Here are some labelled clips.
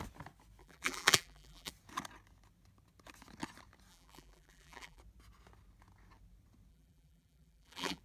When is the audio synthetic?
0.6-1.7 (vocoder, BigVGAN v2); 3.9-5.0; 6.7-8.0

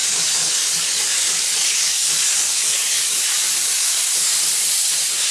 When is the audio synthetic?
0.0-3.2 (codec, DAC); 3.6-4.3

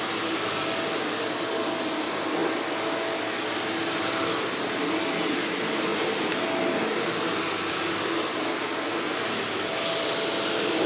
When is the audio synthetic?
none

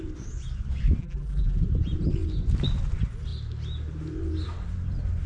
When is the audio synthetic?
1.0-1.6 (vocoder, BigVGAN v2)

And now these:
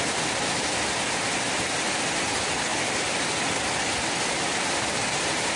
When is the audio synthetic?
none